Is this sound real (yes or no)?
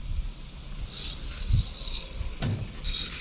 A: yes